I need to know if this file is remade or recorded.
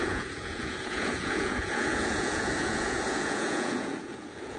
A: remade